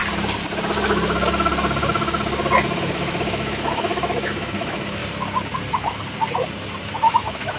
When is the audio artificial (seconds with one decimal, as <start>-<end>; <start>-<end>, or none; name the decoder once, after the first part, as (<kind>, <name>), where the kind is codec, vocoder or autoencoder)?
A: 2.8-5.0 (autoencoder, DAC-VAE); 7.1-7.6